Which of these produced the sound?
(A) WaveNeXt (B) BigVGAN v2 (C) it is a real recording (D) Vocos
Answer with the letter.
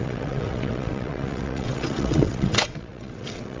A